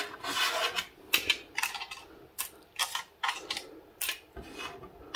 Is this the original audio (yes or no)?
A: yes